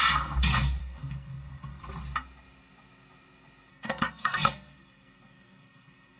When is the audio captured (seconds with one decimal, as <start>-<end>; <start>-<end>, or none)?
0.0-0.8; 1.8-3.7